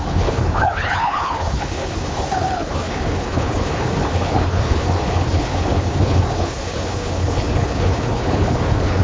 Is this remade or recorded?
remade